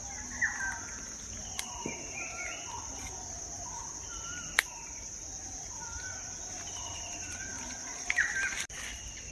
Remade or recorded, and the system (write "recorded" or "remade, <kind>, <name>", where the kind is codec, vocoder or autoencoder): recorded